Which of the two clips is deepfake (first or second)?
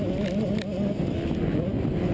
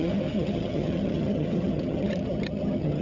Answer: second